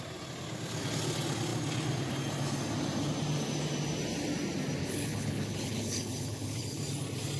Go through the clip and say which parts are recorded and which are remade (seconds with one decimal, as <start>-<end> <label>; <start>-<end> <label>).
0.0-4.8 recorded; 4.8-6.8 remade; 6.8-7.4 recorded